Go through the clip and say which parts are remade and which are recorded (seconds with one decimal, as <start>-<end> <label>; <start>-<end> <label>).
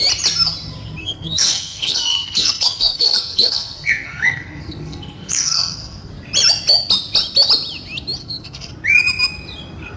0.0-1.0 recorded; 1.0-6.1 remade; 6.1-8.2 recorded; 8.2-8.7 remade; 8.7-10.0 recorded